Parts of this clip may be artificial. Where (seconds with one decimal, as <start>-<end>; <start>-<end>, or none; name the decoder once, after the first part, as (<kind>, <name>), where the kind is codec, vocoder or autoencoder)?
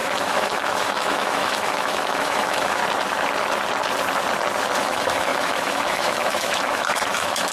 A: 0.0-2.8 (autoencoder, DAC-VAE); 4.8-7.5